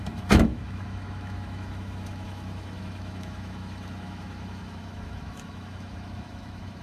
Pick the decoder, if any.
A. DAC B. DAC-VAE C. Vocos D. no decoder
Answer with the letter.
B